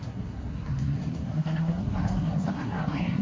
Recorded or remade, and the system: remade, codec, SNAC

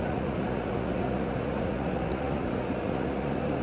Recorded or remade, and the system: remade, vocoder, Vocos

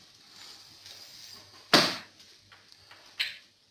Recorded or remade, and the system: recorded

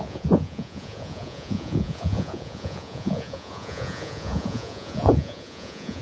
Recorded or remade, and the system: remade, vocoder, Vocos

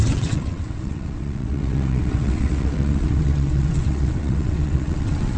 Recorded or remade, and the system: remade, vocoder, WaveNeXt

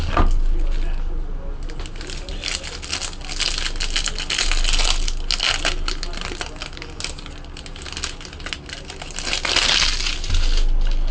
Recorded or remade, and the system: recorded